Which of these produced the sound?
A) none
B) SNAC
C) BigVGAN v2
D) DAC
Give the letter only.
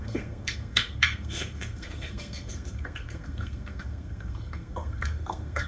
B